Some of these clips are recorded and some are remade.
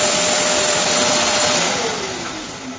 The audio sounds recorded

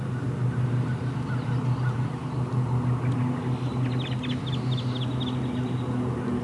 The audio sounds recorded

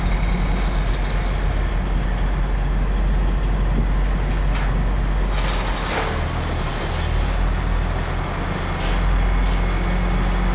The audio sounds recorded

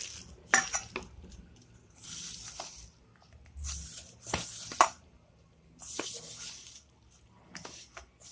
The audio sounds recorded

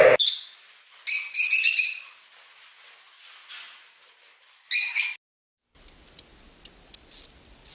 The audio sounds recorded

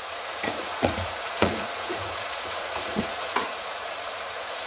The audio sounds remade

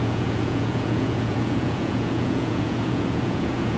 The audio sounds remade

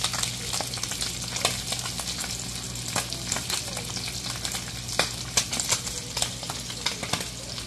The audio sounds recorded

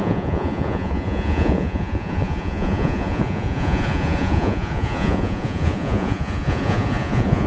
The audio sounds remade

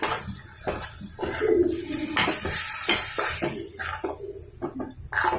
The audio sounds recorded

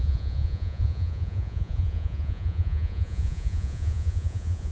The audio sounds remade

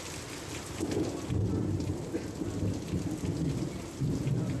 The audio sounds recorded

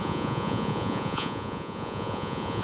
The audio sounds remade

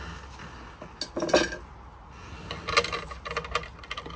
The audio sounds recorded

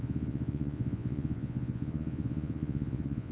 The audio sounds remade